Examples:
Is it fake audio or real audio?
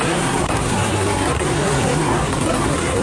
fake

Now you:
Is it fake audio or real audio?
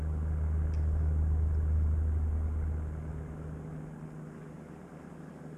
real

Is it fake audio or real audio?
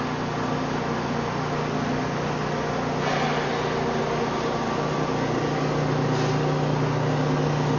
real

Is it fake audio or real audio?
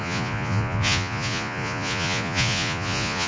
fake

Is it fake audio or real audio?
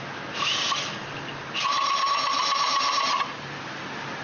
real